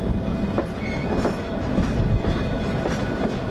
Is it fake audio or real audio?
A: real